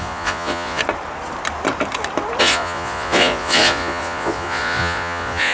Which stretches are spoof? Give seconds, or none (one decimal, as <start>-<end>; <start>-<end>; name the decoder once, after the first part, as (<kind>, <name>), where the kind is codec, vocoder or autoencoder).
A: 0.0-0.8 (vocoder, Vocos); 2.4-5.5

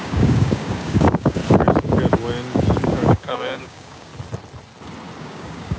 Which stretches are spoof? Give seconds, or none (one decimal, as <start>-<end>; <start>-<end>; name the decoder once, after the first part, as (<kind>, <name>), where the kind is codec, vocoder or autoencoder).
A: 0.0-1.4 (codec, DAC); 2.8-4.1; 5.2-5.8

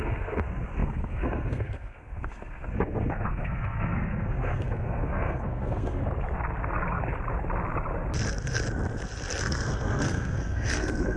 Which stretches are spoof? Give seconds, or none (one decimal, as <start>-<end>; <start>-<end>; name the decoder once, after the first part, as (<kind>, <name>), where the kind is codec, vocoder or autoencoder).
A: 0.0-6.0 (codec, SNAC); 9.4-11.2

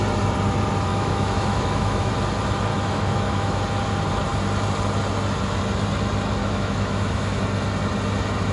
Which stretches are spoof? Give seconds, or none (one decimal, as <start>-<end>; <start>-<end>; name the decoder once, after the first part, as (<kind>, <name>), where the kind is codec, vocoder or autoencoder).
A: 0.9-2.1 (autoencoder, DAC-VAE); 2.7-3.6; 6.4-7.4

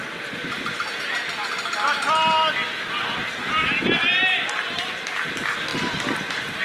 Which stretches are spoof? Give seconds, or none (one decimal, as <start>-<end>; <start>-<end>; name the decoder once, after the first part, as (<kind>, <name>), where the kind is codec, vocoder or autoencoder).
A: none

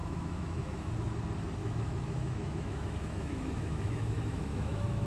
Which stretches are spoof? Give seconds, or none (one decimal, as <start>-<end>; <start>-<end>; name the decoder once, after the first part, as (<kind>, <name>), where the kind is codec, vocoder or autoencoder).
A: 0.0-0.9 (autoencoder, DAC-VAE); 1.6-5.1

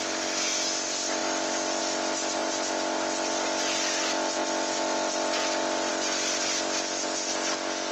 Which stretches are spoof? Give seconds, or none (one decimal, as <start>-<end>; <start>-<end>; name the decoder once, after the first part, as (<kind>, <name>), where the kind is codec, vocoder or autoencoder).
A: 1.2-1.8 (vocoder, BigVGAN v2)